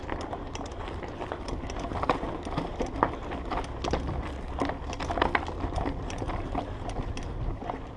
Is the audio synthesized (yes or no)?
no